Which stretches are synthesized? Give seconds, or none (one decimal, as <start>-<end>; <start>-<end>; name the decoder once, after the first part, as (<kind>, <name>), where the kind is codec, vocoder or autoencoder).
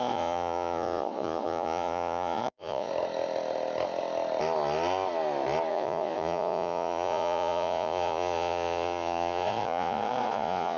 0.0-2.9 (vocoder, Vocos); 5.7-10.8